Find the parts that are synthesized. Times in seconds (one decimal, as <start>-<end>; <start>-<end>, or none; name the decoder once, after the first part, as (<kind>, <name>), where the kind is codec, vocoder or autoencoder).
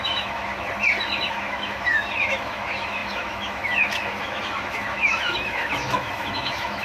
0.0-0.5 (autoencoder, DAC-VAE); 1.3-6.8